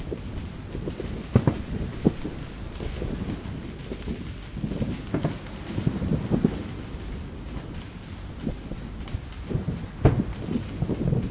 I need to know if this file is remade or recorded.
recorded